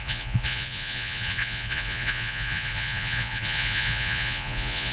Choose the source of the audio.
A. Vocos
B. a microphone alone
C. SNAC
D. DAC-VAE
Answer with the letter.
A